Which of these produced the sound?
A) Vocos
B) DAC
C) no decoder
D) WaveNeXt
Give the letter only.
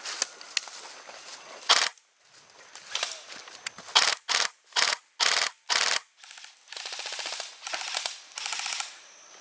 C